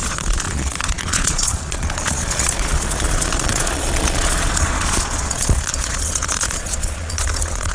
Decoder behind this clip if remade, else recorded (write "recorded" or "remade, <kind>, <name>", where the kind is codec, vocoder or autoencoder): remade, vocoder, Vocos